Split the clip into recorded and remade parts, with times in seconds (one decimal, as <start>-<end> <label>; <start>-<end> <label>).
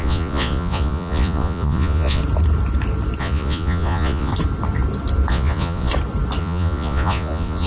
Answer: 0.0-2.2 remade; 2.2-3.2 recorded; 3.2-4.3 remade; 4.3-5.3 recorded; 5.3-5.9 remade; 5.9-6.4 recorded; 6.4-7.7 remade